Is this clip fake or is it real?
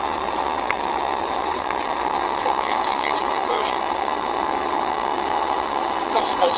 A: fake